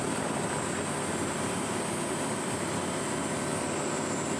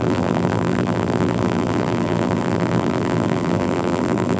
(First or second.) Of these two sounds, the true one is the first